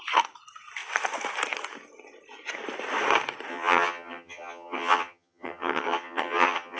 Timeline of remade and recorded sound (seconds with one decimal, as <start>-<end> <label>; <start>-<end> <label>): 0.0-3.5 recorded; 3.5-6.8 remade